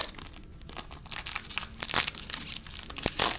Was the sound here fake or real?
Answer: real